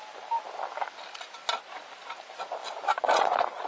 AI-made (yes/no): no